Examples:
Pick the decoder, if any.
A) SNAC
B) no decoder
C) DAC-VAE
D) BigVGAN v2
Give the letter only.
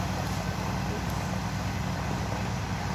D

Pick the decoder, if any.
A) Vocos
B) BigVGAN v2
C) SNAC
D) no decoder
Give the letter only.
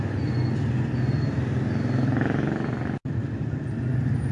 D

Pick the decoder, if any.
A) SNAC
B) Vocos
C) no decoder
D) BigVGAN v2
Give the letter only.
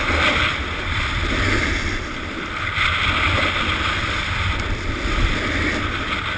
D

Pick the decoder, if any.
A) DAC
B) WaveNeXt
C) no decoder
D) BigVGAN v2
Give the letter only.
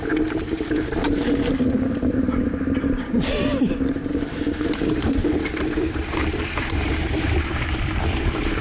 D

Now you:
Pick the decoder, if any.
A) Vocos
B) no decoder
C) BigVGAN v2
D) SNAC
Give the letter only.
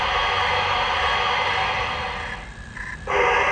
B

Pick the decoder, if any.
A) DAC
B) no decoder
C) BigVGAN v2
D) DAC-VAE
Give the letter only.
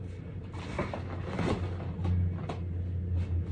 B